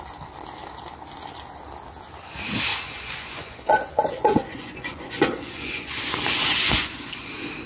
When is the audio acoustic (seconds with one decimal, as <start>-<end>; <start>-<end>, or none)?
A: 0.0-2.7; 7.3-7.7